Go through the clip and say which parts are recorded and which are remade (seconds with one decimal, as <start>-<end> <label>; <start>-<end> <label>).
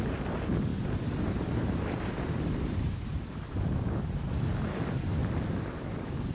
0.0-0.7 recorded; 0.7-4.5 remade; 4.5-6.3 recorded